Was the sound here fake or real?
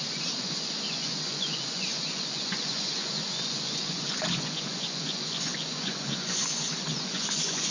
fake